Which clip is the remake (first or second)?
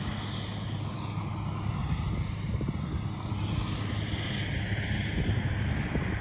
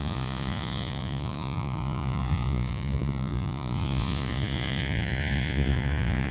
second